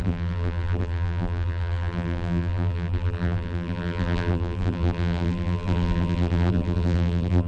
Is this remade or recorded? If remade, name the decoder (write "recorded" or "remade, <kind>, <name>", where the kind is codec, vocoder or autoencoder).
remade, vocoder, BigVGAN v2